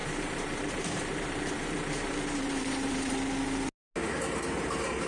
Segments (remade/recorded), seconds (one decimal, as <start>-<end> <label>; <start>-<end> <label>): 0.0-3.1 remade; 3.1-4.0 recorded; 4.0-5.1 remade